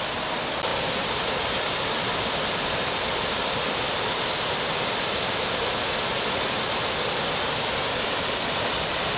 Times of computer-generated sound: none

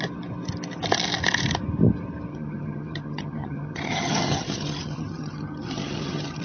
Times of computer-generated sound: 2.3-6.4